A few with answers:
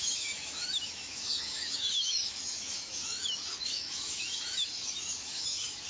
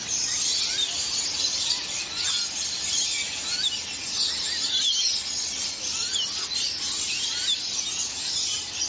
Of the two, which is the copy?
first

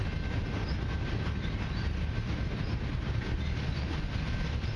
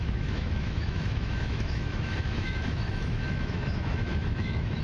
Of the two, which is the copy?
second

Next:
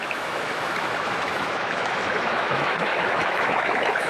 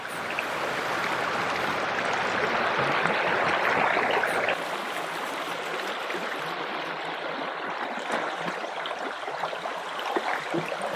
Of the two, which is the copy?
first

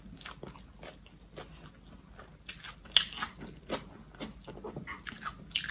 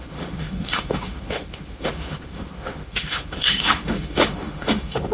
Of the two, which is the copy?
second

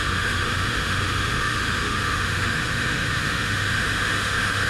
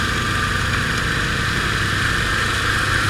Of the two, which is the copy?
first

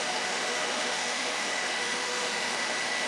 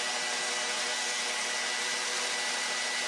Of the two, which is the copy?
first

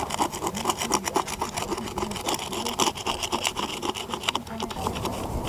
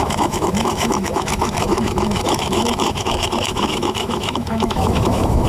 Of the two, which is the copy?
second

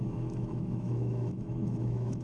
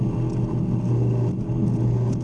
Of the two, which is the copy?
first